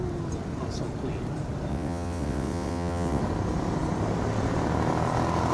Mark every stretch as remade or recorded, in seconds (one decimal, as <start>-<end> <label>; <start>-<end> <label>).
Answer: 0.0-1.7 recorded; 1.7-3.2 remade; 3.2-5.5 recorded